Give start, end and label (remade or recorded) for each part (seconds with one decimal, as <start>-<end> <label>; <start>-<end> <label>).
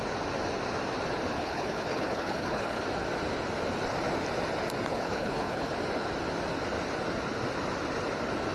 0.0-1.3 recorded; 1.3-2.8 remade; 2.8-4.9 recorded; 4.9-5.7 remade; 5.7-8.5 recorded